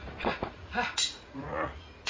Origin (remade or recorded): remade